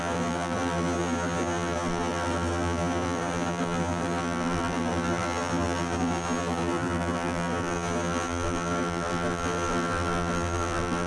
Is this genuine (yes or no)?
no